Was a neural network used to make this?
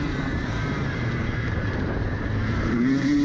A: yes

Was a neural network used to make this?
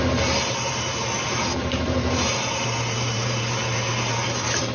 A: yes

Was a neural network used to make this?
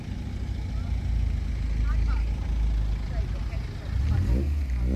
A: no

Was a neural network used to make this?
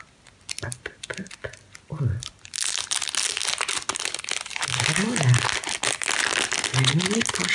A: no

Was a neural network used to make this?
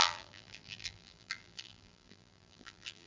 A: yes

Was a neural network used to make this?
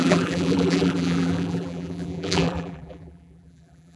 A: yes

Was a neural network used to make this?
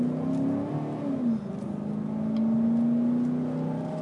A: no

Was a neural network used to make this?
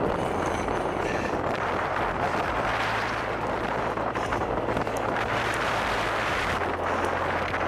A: yes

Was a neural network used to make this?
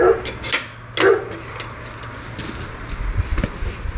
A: no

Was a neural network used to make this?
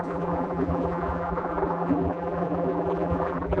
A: yes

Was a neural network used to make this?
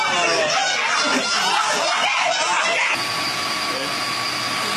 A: no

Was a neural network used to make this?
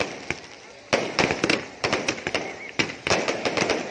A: yes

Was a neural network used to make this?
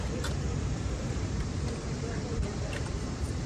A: yes